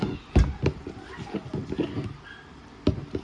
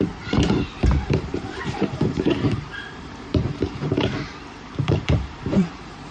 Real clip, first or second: first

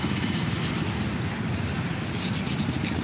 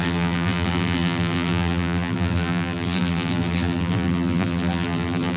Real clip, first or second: first